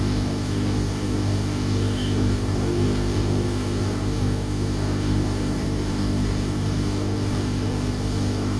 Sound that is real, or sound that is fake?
fake